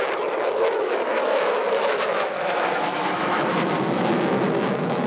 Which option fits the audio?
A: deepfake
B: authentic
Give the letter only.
A